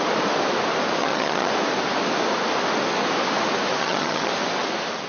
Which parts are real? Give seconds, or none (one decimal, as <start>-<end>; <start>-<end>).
0.0-1.0; 1.5-3.8; 4.3-5.1